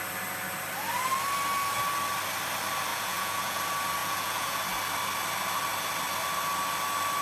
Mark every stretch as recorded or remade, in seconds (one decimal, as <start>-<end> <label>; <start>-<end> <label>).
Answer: 0.0-2.9 recorded; 2.9-3.6 remade; 3.6-4.0 recorded; 4.0-4.6 remade; 4.6-7.2 recorded

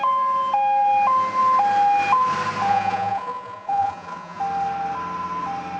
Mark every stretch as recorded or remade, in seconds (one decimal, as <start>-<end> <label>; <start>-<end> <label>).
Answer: 0.0-2.7 recorded; 2.7-4.4 remade; 4.4-5.8 recorded

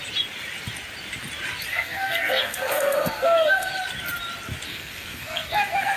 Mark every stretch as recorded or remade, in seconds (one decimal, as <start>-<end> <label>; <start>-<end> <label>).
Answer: 0.0-1.7 recorded; 1.7-3.7 remade; 3.7-4.7 recorded; 4.7-6.0 remade

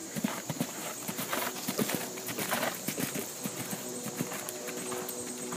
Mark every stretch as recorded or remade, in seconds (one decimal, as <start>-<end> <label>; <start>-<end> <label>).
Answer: 0.0-3.4 remade; 3.4-3.9 recorded; 3.9-4.7 remade; 4.7-5.6 recorded

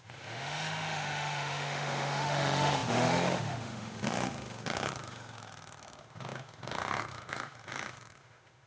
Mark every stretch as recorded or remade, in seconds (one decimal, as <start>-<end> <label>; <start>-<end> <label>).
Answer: 0.0-8.7 remade